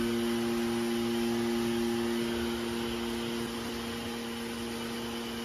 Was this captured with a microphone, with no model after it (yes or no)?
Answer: yes